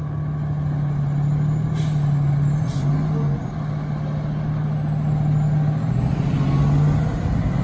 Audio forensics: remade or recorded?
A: recorded